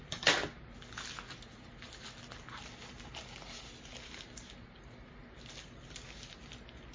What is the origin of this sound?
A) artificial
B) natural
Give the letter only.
B